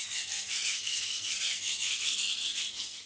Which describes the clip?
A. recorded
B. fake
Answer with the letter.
B